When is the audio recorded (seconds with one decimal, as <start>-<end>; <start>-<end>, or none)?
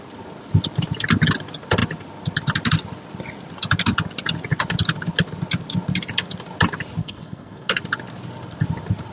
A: 0.0-7.0; 7.7-9.1